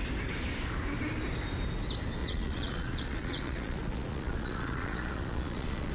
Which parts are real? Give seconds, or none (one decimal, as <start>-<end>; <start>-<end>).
0.0-2.2

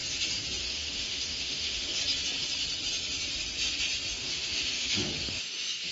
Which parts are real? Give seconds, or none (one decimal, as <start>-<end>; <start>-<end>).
0.0-0.6; 2.0-4.1

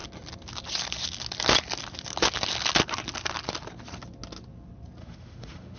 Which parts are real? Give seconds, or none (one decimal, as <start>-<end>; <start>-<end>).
0.0-5.0

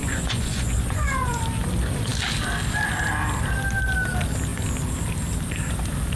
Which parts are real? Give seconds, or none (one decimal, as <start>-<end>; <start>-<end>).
1.4-6.2

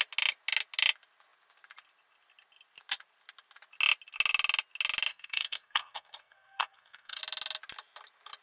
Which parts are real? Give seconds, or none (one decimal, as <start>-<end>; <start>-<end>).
0.0-5.1; 7.2-8.4